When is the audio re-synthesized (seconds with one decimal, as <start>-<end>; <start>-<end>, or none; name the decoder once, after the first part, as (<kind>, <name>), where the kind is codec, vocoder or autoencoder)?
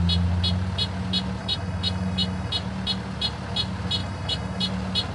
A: 1.4-2.5 (autoencoder, DAC-VAE); 4.0-4.6